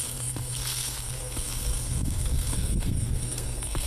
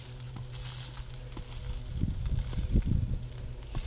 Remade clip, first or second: first